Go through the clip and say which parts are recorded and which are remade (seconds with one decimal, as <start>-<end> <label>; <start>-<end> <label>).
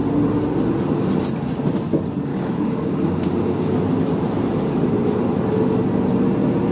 0.0-2.3 recorded; 2.3-3.1 remade; 3.1-6.7 recorded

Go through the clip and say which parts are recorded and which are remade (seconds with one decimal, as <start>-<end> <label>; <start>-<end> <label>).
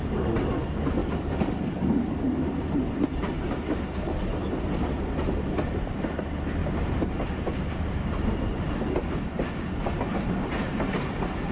0.0-1.0 recorded; 1.0-2.4 remade; 2.4-11.5 recorded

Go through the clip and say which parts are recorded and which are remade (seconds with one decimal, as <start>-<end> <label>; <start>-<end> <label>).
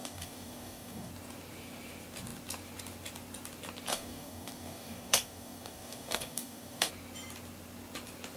0.0-1.1 remade; 1.1-3.9 recorded; 3.9-6.9 remade; 6.9-8.4 recorded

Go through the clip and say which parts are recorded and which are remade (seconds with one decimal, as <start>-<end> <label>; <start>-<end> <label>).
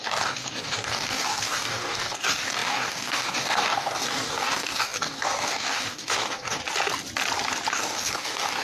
0.0-6.6 remade; 6.6-7.7 recorded; 7.7-8.6 remade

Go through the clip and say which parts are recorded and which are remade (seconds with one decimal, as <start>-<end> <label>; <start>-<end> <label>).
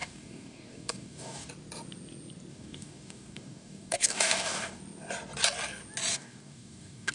0.0-1.5 remade; 1.5-2.5 recorded; 2.5-4.8 remade; 4.8-6.1 recorded; 6.1-7.1 remade